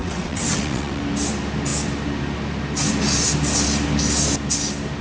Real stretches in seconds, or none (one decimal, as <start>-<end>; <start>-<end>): 1.0-5.0